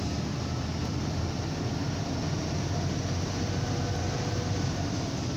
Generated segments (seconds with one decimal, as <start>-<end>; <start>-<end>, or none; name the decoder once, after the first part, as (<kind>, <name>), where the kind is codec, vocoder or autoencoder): none